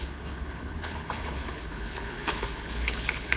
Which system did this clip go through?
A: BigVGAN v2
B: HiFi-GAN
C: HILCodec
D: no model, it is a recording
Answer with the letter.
C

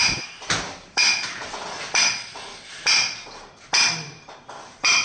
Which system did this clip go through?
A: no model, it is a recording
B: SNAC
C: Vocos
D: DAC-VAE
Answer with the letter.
A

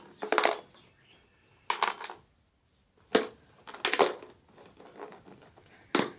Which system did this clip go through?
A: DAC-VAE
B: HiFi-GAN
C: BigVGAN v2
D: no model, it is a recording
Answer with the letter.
D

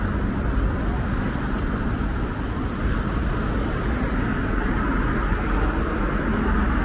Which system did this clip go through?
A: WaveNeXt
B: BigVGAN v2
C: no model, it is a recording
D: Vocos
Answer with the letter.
C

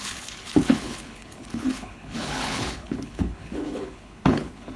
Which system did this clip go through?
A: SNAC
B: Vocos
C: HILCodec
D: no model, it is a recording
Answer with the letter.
C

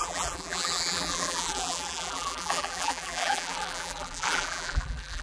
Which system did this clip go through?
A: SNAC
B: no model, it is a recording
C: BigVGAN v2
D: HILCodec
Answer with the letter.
C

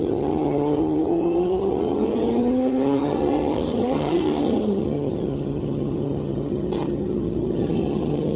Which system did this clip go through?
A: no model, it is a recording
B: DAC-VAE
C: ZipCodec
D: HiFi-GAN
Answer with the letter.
D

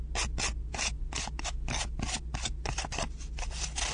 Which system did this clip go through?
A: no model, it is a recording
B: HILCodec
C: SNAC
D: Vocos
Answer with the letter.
A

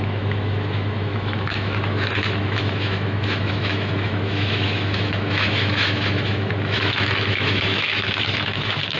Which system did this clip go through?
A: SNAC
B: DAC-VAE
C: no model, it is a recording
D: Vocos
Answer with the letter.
B